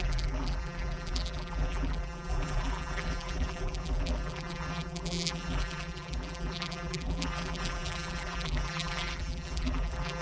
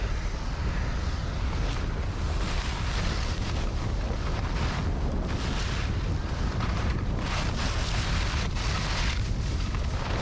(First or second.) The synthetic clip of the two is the first